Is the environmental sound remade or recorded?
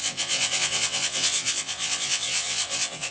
remade